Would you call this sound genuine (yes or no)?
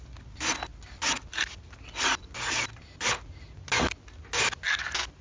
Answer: yes